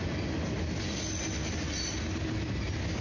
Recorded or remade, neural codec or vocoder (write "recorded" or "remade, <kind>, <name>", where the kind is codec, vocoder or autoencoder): recorded